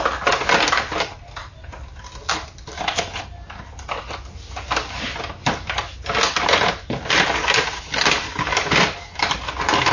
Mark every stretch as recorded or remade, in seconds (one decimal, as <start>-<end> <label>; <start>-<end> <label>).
0.0-9.9 recorded